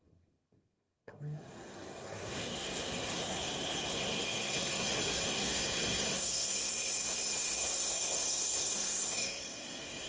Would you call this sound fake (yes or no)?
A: yes